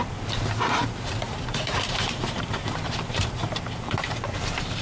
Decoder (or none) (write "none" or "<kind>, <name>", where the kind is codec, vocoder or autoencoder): vocoder, BigVGAN v2